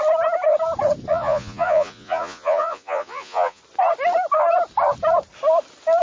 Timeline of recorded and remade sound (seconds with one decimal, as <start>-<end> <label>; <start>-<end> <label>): 0.0-1.1 recorded; 1.1-3.6 remade; 3.6-6.0 recorded